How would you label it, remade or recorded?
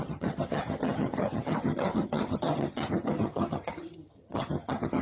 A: remade